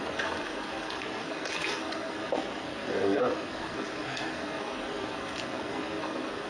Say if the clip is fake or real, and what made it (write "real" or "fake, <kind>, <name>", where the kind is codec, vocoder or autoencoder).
fake, codec, SNAC